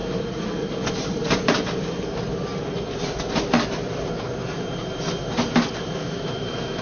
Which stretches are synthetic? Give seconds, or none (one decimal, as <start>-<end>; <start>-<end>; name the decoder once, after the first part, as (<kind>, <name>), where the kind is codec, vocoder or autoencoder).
6.0-6.8 (autoencoder, DAC-VAE)